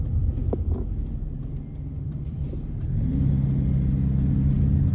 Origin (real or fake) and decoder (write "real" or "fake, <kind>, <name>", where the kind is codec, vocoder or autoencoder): real